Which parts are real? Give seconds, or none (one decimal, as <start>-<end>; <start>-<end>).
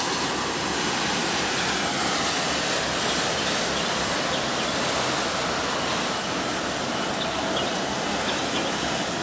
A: 0.0-9.2